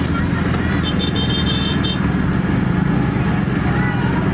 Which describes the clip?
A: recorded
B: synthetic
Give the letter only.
A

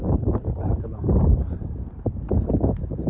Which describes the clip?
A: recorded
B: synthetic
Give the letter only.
B